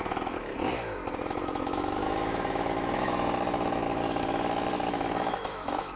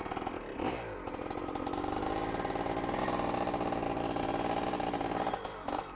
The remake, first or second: first